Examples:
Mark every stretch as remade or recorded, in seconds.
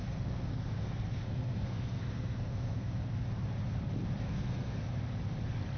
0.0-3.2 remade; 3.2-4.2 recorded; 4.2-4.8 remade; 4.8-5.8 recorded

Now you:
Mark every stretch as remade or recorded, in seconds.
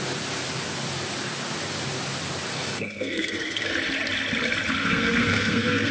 0.0-2.5 recorded; 2.5-3.7 remade; 3.7-4.8 recorded; 4.8-5.9 remade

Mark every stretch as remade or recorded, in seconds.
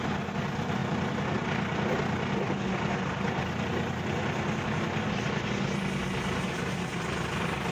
0.0-7.7 recorded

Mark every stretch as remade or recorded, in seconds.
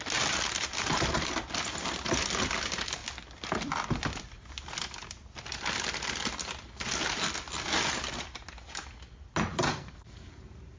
0.0-9.7 recorded; 9.7-10.3 remade; 10.3-10.8 recorded